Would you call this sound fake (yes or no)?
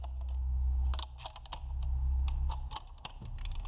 no